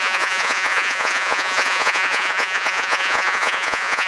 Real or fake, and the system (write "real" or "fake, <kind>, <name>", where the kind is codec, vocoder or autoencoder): fake, vocoder, Vocos